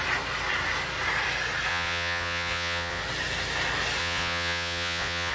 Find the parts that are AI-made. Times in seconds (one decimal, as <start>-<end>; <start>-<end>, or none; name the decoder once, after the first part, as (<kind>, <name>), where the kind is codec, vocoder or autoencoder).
1.7-3.0 (vocoder, Vocos); 4.0-5.3